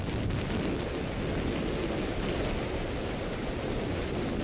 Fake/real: real